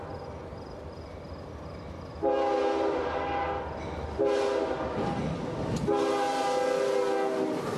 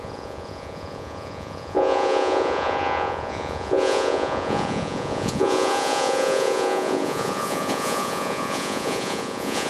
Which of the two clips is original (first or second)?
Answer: first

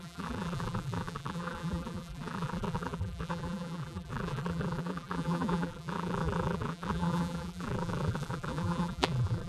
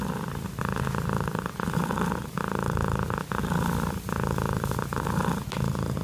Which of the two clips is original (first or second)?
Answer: second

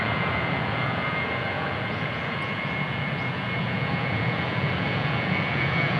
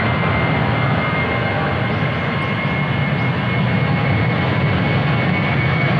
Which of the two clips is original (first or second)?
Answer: second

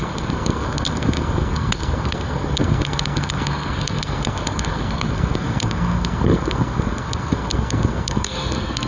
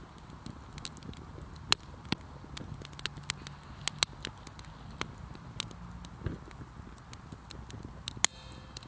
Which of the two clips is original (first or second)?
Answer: second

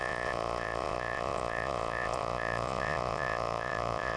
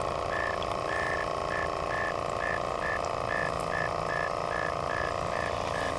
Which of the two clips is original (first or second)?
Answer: second